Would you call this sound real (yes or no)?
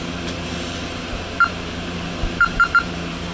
no